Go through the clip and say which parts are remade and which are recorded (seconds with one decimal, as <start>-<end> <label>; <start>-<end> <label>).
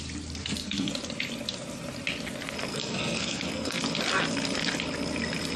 0.0-0.4 recorded; 0.4-0.9 remade; 0.9-2.7 recorded; 2.7-3.8 remade; 3.8-5.6 recorded